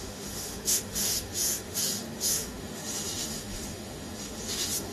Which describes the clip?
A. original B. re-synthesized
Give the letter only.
B